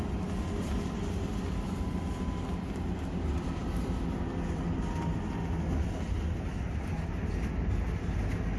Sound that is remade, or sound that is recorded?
recorded